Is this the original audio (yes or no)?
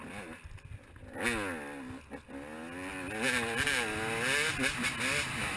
yes